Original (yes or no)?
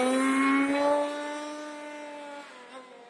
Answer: yes